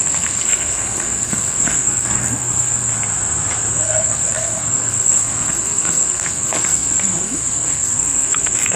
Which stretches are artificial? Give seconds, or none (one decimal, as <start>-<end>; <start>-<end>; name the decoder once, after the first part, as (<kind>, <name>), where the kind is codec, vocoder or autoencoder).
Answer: 0.0-2.9 (codec, SNAC); 3.7-8.8